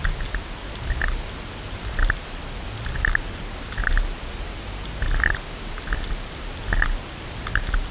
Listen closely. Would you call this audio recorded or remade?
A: recorded